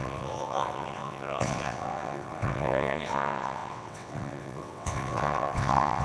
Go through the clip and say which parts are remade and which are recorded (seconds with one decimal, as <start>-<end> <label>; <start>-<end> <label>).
0.0-6.0 remade